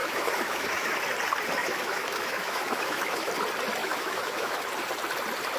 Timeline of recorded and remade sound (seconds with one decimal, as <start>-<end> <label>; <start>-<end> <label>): 0.0-1.0 remade; 1.0-1.6 recorded; 1.6-3.3 remade; 3.3-3.8 recorded; 3.8-4.6 remade; 4.6-5.6 recorded